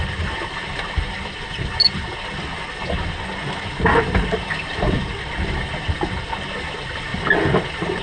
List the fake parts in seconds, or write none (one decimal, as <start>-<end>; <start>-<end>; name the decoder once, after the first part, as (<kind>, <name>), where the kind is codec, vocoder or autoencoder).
none

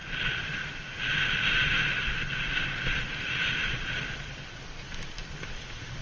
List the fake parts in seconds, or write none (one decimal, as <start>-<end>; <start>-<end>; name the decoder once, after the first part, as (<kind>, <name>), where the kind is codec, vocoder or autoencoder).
0.0-0.6 (vocoder, BigVGAN v2)

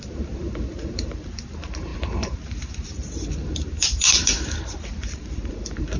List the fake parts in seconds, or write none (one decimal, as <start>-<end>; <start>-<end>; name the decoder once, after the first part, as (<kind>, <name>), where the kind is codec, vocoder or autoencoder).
0.0-6.0 (vocoder, BigVGAN v2)

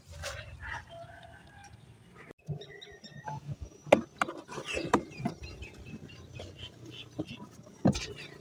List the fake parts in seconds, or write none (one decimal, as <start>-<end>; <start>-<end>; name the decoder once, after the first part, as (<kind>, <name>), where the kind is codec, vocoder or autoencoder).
none

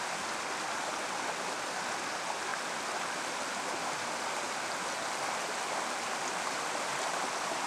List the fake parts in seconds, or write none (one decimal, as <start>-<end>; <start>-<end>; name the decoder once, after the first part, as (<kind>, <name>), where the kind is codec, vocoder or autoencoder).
2.5-4.3 (vocoder, BigVGAN v2)